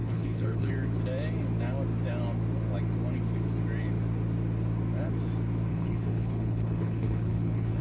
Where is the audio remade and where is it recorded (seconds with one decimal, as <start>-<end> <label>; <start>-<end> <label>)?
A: 0.0-0.7 remade; 0.7-5.7 recorded; 5.7-7.8 remade